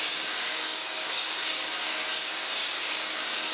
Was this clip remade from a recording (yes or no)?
yes